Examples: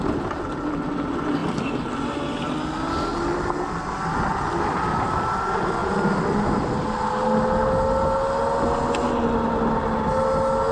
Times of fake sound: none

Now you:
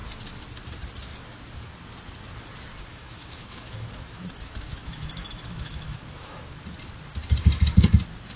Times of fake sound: 2.9-6.4 (autoencoder, DAC-VAE)

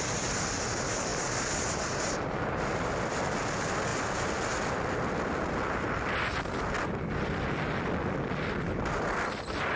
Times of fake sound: none

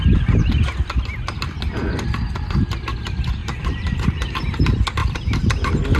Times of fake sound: 3.4-4.6 (vocoder, BigVGAN v2); 5.0-5.5

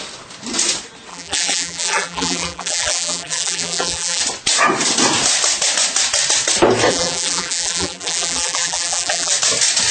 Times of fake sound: 1.1-4.2 (vocoder, BigVGAN v2); 6.9-9.3

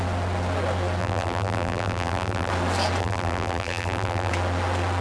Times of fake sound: 1.0-2.5 (vocoder, BigVGAN v2); 3.0-4.3

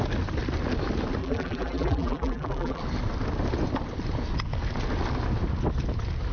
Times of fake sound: 1.2-2.8 (vocoder, BigVGAN v2)